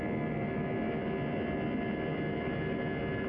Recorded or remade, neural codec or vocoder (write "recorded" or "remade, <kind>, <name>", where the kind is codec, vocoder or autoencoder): recorded